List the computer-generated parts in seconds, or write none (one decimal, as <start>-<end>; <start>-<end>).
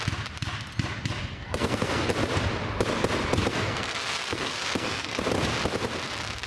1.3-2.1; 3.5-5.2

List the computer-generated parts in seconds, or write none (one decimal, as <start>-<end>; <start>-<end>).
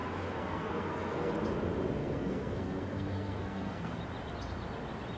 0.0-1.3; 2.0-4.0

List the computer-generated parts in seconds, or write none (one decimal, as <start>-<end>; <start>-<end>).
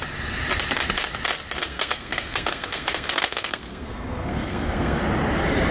1.6-5.0